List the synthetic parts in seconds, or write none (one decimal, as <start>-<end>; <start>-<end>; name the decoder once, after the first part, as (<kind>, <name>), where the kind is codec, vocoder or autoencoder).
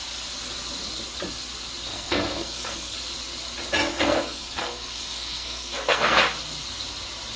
1.9-3.0 (codec, SNAC); 3.9-6.2